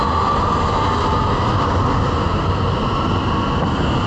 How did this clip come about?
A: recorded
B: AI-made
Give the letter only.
A